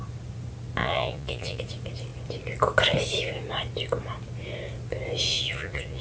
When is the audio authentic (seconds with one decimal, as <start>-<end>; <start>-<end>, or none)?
0.0-0.8; 1.6-5.3